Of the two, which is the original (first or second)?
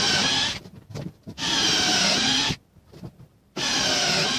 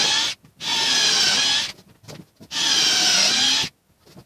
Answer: second